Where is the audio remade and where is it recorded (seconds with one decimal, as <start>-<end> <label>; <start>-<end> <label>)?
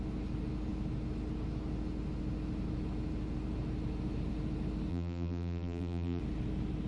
0.0-4.9 recorded; 4.9-6.2 remade; 6.2-6.9 recorded